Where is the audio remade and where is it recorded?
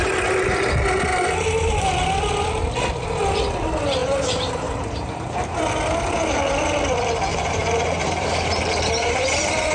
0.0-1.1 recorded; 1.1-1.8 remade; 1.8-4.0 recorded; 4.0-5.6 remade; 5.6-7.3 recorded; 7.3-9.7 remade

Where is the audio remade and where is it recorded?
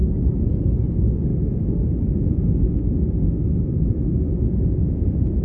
0.0-0.9 recorded; 0.9-1.3 remade; 1.3-4.5 recorded; 4.5-5.4 remade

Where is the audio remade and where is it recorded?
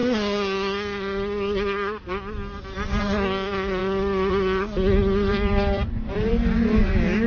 0.0-3.8 recorded; 3.8-4.3 remade; 4.3-5.3 recorded; 5.3-6.3 remade; 6.3-7.3 recorded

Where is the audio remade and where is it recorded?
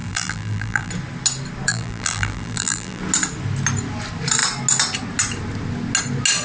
0.0-0.9 remade; 0.9-1.7 recorded; 1.7-3.0 remade; 3.0-6.4 recorded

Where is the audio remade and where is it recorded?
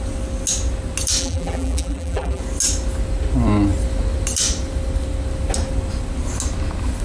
0.0-1.2 recorded; 1.2-2.4 remade; 2.4-7.0 recorded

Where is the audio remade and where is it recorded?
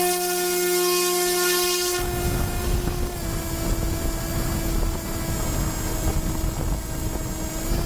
0.0-5.9 recorded; 5.9-7.2 remade; 7.2-7.9 recorded